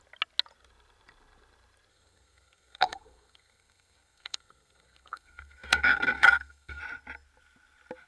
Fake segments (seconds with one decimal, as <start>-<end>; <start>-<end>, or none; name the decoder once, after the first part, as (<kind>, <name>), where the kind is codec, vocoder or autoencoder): 1.9-6.8 (codec, SNAC)